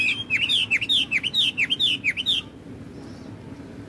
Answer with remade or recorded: recorded